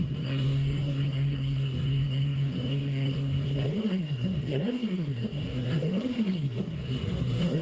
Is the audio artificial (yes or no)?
yes